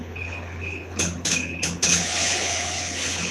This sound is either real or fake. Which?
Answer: fake